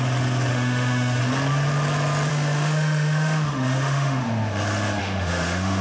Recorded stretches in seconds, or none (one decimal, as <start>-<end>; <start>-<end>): 0.0-0.5; 1.2-2.3; 4.2-5.0